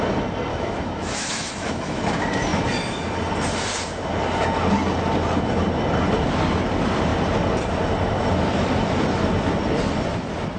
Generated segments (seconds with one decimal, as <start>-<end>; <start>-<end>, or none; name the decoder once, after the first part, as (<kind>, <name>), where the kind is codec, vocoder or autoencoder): 0.5-2.0 (autoencoder, DAC-VAE)